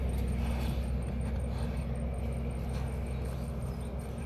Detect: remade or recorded recorded